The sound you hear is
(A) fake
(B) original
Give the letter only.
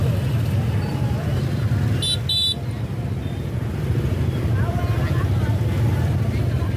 B